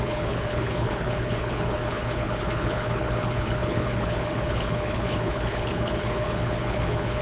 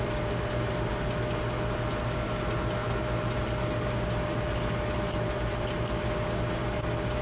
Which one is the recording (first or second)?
second